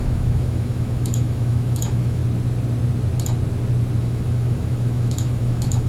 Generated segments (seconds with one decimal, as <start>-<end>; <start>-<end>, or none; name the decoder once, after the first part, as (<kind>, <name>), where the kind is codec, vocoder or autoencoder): 0.0-2.2 (autoencoder, DAC-VAE); 4.0-5.9